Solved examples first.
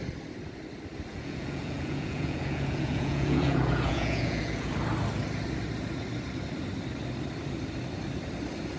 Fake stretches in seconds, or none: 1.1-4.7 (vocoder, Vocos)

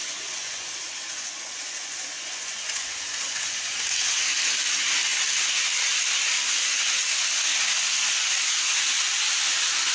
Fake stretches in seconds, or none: 0.0-3.8 (vocoder, Vocos)

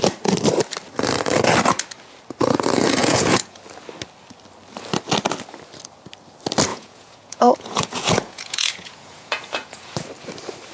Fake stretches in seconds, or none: 3.0-3.6 (vocoder, Vocos); 6.7-9.9

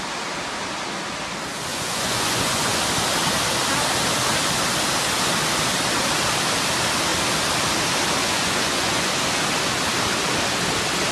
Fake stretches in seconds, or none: 1.7-2.8 (vocoder, Vocos); 8.2-9.2

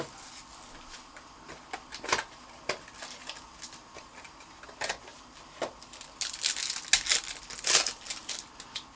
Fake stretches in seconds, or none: none

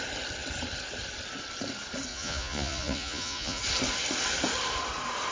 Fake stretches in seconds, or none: 2.1-3.6 (vocoder, Vocos)

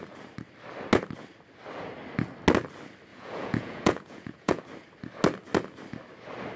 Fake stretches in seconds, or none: 3.1-4.6 (vocoder, Vocos)